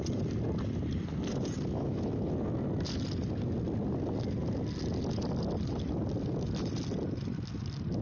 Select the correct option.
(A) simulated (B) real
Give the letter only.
B